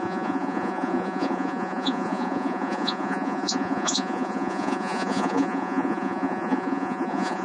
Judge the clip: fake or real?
fake